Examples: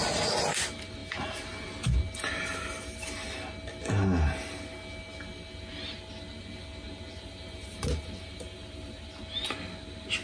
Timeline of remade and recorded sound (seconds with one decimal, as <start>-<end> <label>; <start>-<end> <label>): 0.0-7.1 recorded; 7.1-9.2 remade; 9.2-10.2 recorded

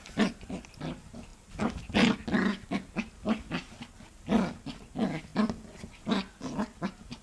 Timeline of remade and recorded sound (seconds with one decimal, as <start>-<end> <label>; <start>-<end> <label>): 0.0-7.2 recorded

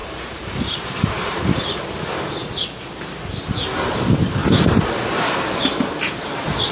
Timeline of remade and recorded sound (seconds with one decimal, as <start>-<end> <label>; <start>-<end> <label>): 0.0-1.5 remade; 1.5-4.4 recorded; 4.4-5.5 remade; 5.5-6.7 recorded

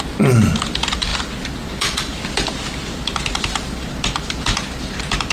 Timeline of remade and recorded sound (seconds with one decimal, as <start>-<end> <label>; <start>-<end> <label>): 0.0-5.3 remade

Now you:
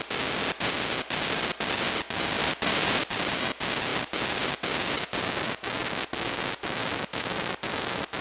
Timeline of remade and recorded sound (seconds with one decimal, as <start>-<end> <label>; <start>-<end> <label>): 0.0-2.4 recorded; 2.4-3.1 remade; 3.1-8.2 recorded

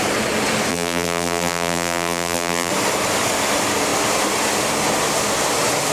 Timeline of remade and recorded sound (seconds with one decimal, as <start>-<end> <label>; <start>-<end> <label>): 0.0-0.7 recorded; 0.7-2.7 remade; 2.7-5.9 recorded

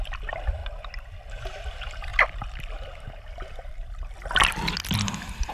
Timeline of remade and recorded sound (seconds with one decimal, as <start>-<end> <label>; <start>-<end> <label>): 0.0-0.6 remade; 0.6-1.7 recorded; 1.7-2.1 remade; 2.1-5.5 recorded

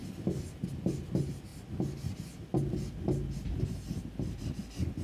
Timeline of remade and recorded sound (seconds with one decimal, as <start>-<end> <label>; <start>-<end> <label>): 0.0-5.0 recorded